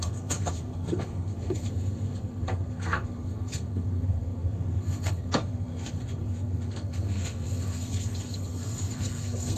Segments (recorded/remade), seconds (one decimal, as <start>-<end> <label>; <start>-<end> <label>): 0.0-9.6 remade